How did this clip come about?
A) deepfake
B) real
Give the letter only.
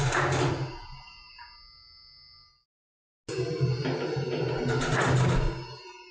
B